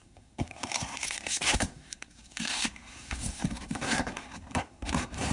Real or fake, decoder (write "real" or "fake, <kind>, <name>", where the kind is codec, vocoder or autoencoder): fake, codec, SNAC